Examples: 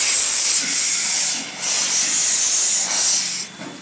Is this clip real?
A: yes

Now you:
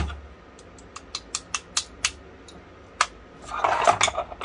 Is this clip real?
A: yes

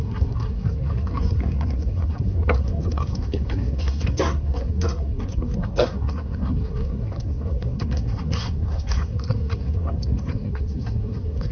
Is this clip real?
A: no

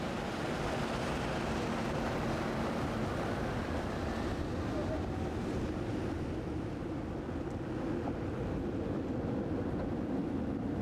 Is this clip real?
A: yes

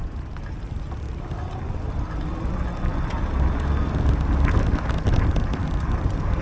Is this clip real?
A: yes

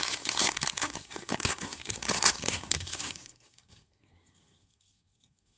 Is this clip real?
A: no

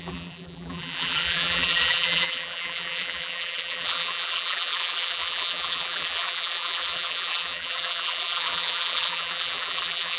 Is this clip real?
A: no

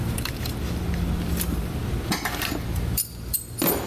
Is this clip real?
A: no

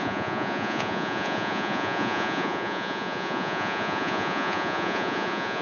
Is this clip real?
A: no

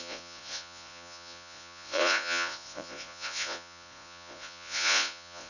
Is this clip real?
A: no